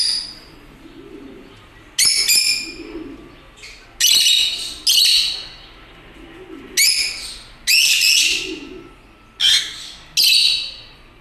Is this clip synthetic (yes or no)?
no